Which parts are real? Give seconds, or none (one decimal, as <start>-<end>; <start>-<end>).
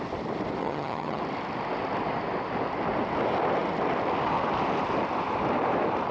0.0-0.6; 1.2-6.1